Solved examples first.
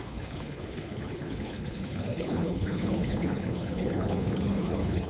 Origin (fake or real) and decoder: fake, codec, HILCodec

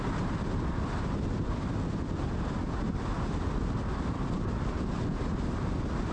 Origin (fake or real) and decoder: real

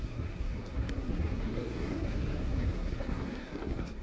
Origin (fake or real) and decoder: fake, codec, SNAC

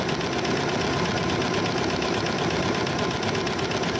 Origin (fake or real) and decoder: real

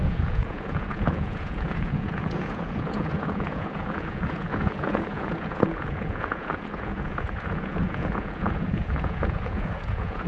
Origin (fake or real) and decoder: fake, vocoder, Vocos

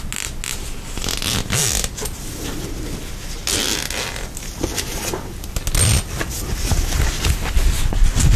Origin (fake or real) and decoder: real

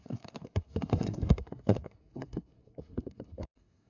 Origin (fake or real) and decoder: fake, codec, SNAC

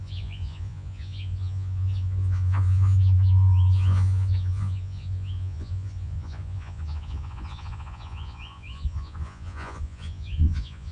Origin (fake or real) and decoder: fake, vocoder, Vocos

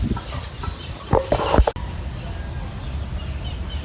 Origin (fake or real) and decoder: real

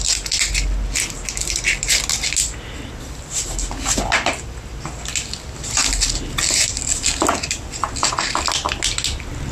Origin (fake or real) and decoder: real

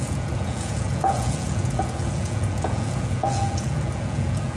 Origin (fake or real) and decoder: fake, vocoder, Vocos